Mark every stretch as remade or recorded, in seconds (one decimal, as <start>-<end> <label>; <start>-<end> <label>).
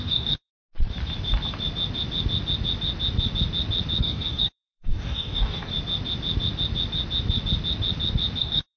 0.0-0.5 remade; 0.5-4.0 recorded; 4.0-5.7 remade; 5.7-8.4 recorded; 8.4-8.8 remade